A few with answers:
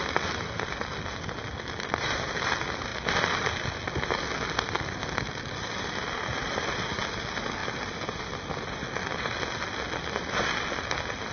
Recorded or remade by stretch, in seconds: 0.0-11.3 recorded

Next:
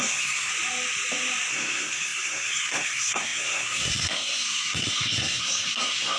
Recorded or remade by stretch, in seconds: 0.0-0.5 remade; 0.5-1.5 recorded; 1.5-6.2 remade

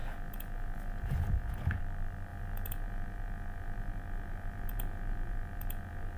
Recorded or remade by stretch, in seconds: 0.0-1.8 remade; 1.8-2.3 recorded; 2.3-6.2 remade